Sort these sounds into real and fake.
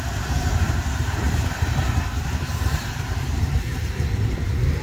fake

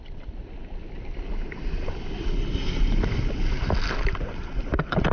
real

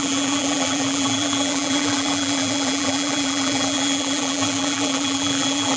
fake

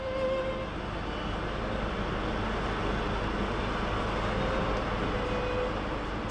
real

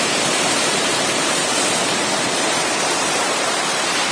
fake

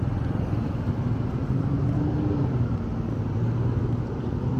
real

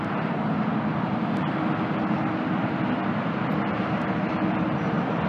real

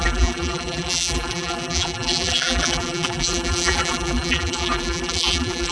fake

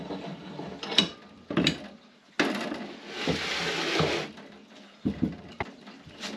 real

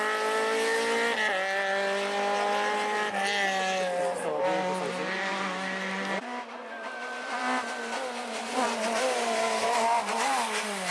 real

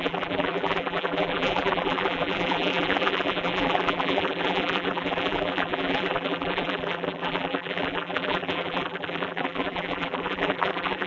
fake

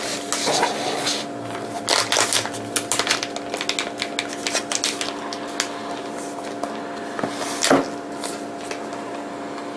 real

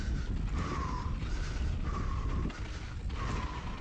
real